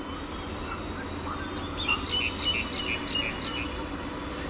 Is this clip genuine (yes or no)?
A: yes